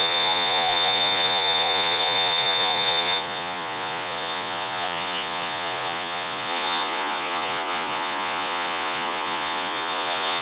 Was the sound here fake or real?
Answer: fake